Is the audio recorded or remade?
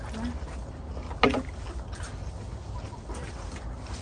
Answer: recorded